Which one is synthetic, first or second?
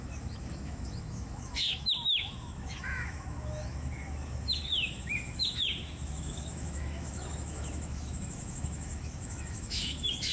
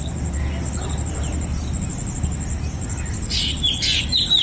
first